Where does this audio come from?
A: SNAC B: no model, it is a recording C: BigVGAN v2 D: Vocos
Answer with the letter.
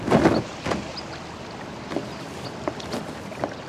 B